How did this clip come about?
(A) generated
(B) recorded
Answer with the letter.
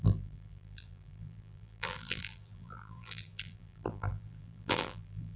A